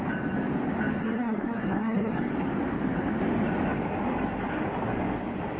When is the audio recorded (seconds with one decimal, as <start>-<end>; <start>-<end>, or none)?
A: 0.0-1.0; 2.3-5.6

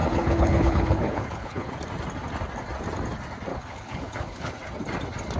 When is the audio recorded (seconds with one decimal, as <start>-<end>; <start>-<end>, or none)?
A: 1.7-3.5; 4.5-5.4

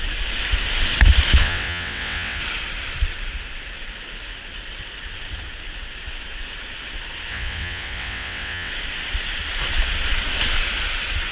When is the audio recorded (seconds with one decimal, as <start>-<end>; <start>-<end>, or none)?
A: 0.0-1.4; 2.4-7.3; 8.7-11.3

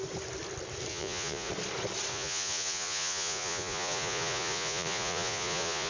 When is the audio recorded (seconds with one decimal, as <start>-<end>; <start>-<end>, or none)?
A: 0.0-0.9; 1.5-2.1